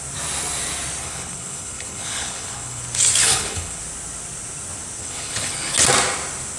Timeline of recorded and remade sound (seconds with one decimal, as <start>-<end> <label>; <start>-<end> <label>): 0.0-1.0 recorded; 1.0-2.8 remade; 2.8-3.2 recorded; 3.2-3.8 remade; 3.8-5.0 recorded; 5.0-5.7 remade; 5.7-6.6 recorded